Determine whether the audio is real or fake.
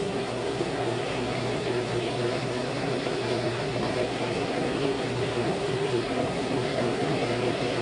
fake